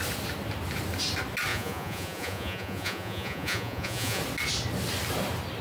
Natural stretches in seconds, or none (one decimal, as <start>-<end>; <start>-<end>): 0.0-1.5; 4.2-5.6